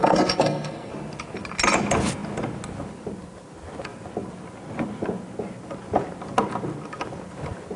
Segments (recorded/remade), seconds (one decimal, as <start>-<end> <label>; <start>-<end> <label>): 0.0-0.9 remade; 0.9-7.8 recorded